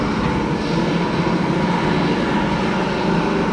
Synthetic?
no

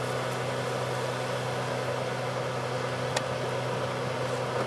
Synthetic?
no